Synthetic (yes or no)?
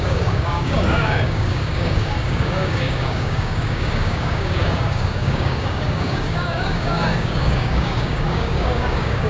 yes